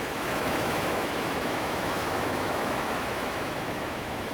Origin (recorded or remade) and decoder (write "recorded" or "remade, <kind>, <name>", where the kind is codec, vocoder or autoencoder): remade, autoencoder, DAC-VAE